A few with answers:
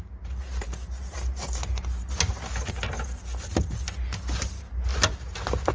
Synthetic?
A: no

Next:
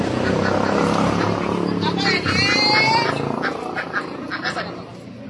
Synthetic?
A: no